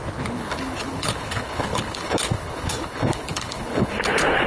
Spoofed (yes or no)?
yes